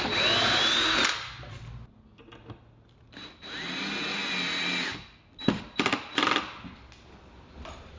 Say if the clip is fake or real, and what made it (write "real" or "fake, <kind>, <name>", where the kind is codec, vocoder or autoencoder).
real